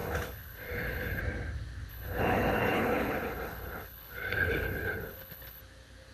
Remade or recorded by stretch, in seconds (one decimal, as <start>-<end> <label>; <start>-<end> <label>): 0.0-1.2 remade; 1.2-1.9 recorded; 1.9-5.6 remade; 5.6-6.1 recorded